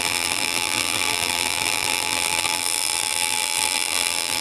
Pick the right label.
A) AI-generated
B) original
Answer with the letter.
A